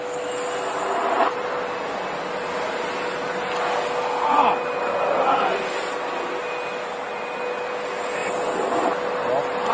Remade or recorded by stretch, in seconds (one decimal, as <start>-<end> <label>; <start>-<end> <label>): 0.0-9.7 recorded